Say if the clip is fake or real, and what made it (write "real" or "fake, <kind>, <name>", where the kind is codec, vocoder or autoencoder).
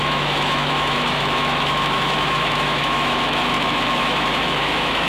fake, autoencoder, DAC-VAE